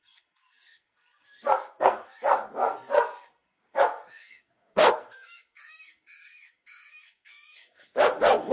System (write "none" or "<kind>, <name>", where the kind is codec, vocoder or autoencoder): codec, SNAC